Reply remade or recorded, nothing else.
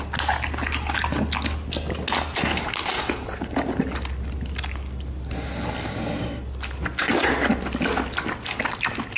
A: recorded